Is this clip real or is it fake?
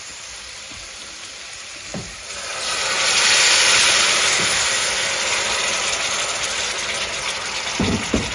real